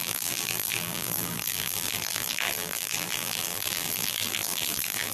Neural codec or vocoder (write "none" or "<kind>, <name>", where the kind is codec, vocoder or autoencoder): vocoder, BigVGAN v2